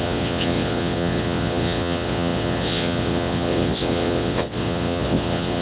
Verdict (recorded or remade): remade